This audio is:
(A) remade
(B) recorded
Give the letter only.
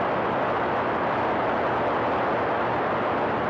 B